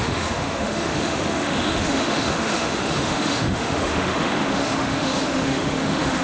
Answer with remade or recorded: remade